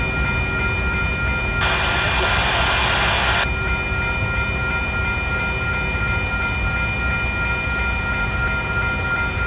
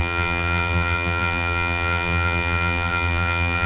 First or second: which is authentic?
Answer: first